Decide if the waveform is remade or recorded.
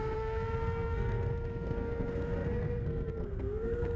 remade